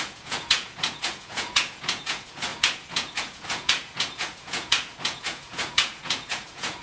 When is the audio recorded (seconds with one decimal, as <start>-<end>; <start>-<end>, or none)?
none